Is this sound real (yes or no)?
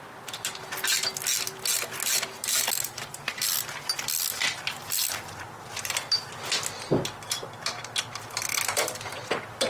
yes